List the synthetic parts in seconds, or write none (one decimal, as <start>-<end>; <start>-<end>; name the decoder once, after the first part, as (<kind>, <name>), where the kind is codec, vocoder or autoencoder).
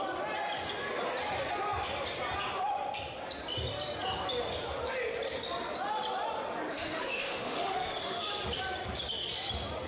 6.7-8.3 (autoencoder, DAC-VAE)